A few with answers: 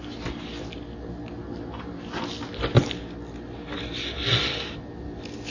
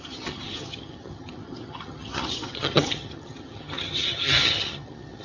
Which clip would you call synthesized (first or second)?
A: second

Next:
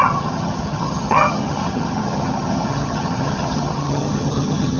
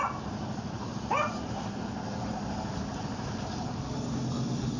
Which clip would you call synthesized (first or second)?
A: first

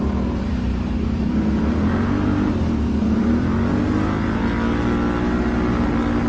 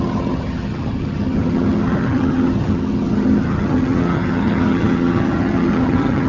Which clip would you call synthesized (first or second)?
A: second